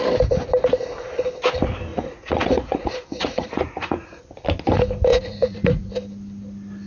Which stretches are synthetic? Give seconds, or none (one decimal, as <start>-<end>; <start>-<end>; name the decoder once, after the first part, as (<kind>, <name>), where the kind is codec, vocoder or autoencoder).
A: 1.9-4.2 (vocoder, Vocos); 5.1-5.9

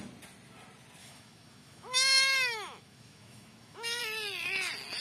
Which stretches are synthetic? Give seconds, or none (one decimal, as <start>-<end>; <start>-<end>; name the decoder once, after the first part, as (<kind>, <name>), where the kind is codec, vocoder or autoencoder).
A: 1.0-4.0 (autoencoder, DAC-VAE)

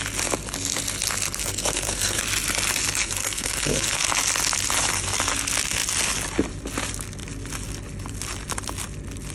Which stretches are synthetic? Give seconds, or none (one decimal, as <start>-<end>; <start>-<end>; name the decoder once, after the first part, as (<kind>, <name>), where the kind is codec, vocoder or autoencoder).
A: 1.4-2.2 (codec, SNAC); 3.0-4.0

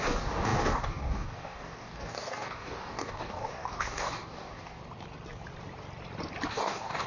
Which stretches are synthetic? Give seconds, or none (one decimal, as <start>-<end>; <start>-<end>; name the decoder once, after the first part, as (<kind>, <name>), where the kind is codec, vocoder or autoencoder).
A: 0.0-4.8 (codec, DAC); 6.5-7.1

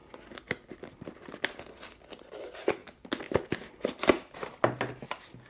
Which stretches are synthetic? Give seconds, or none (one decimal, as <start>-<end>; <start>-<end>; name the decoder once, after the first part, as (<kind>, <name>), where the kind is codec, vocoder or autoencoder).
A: none

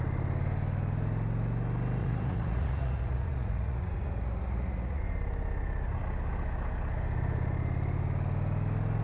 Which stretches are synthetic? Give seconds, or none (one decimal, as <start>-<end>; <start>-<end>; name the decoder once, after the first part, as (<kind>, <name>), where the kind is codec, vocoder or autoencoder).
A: 2.0-5.0 (vocoder, Vocos)

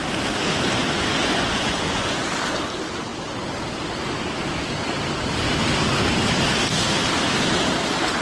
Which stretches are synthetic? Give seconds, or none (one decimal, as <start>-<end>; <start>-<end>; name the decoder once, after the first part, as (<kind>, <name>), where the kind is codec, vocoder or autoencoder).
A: 0.8-2.3 (vocoder, Vocos)

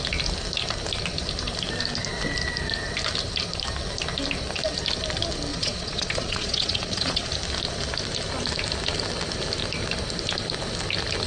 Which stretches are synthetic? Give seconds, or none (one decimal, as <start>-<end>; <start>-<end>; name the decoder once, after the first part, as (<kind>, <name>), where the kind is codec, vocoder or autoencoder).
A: 5.5-7.3 (vocoder, Vocos)